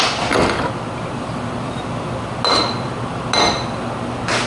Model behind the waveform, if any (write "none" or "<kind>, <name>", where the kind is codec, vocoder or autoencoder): none